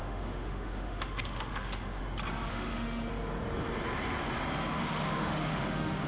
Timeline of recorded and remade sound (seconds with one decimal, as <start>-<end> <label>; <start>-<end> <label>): 0.0-2.0 remade; 2.0-2.5 recorded; 2.5-3.1 remade; 3.1-4.8 recorded; 4.8-6.1 remade